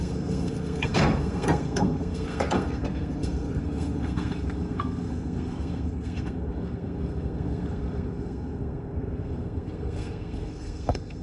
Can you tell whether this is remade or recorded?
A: remade